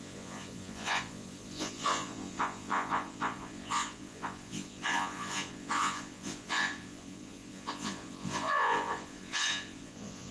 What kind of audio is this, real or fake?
fake